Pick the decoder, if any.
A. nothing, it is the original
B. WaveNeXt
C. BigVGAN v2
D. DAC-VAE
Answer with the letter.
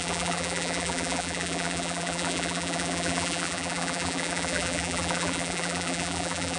C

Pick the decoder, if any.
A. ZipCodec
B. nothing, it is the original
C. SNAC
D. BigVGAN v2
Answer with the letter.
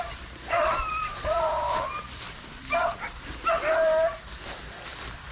D